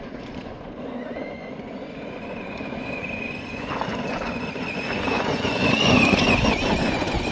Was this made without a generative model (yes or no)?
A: no